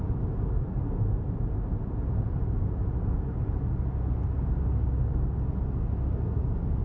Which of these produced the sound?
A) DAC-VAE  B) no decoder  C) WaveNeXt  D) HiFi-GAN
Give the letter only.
B